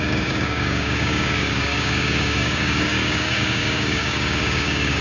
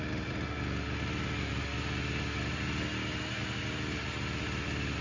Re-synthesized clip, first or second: first